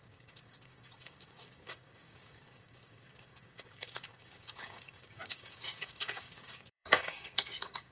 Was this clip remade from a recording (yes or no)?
yes